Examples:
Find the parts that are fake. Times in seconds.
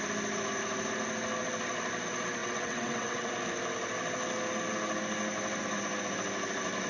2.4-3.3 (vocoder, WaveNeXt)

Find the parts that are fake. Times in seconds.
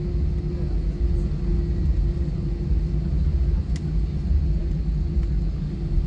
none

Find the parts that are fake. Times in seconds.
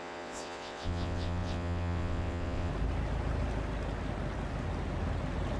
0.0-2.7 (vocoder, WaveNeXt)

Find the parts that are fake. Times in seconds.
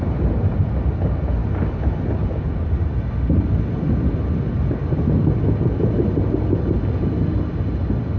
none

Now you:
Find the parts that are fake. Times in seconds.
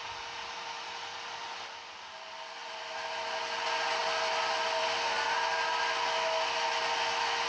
none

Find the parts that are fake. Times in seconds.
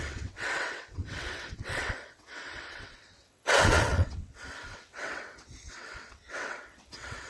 0.0-7.3 (vocoder, WaveNeXt)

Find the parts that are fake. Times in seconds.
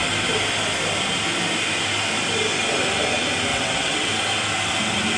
3.5-4.1 (vocoder, WaveNeXt)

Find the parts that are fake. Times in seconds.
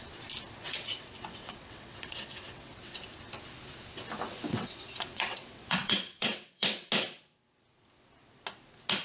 0.6-3.0 (vocoder, WaveNeXt); 4.5-6.9